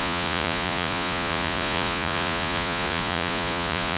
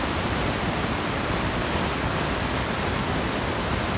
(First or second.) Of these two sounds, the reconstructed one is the first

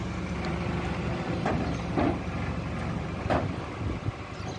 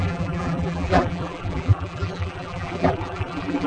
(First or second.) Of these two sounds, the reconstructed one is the second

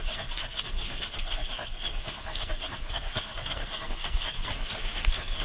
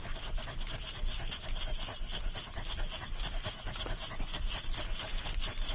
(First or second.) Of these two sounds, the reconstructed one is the first